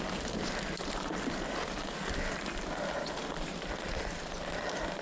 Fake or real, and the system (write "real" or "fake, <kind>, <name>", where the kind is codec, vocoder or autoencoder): real